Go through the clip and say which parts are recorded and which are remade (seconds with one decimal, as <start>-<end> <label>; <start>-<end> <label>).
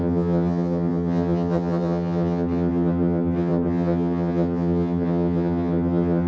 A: 0.0-6.3 remade